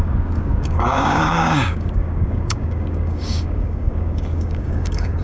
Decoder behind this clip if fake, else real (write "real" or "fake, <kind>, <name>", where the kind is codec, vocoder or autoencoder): fake, codec, DAC